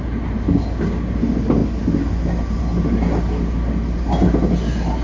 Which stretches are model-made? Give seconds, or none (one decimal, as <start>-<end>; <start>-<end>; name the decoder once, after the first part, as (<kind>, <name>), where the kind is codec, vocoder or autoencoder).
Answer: none